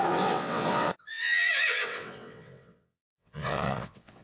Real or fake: fake